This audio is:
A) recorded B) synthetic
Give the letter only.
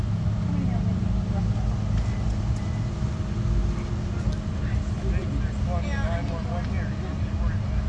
A